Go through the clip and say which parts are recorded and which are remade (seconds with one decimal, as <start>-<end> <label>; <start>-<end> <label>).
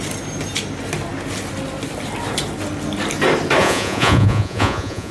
0.0-3.6 recorded; 3.6-5.1 remade